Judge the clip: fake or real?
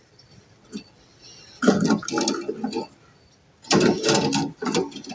real